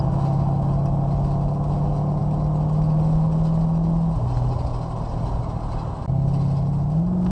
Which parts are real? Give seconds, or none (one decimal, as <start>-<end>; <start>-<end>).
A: 0.0-7.3